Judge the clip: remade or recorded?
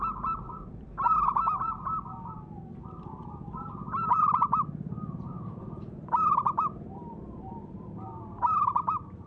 remade